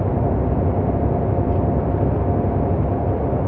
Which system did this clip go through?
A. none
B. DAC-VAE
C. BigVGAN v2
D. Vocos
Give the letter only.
A